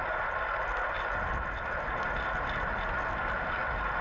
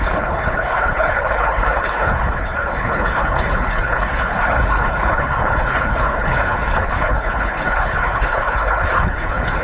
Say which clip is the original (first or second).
first